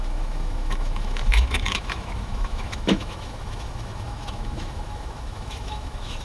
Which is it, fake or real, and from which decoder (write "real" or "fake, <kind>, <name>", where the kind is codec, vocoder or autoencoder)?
fake, autoencoder, DAC-VAE